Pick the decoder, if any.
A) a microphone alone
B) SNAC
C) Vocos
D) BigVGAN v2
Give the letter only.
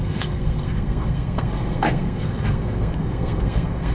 B